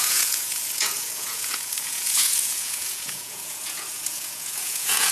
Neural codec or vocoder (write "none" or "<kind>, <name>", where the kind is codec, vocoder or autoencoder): vocoder, Vocos